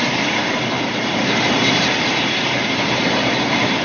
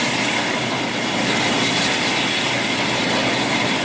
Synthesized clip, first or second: first